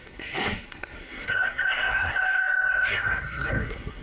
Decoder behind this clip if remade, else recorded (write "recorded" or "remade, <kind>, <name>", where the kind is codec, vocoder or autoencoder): remade, codec, SNAC